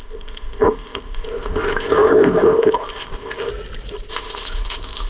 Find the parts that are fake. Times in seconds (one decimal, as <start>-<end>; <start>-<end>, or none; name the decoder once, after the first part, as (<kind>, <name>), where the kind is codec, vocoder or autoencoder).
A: 0.0-3.5 (codec, ZipCodec); 4.1-5.1